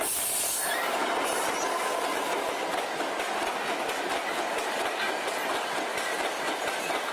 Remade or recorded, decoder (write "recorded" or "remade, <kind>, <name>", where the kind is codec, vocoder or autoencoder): recorded